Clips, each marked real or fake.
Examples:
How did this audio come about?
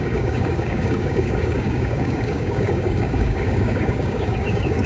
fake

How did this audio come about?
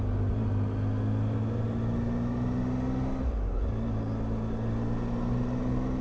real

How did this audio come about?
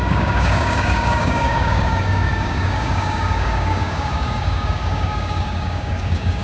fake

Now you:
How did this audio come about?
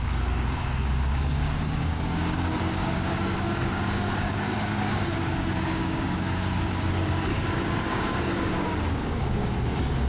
fake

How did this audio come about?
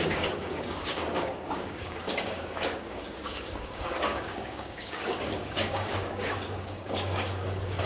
fake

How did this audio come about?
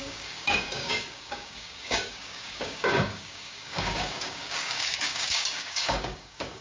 fake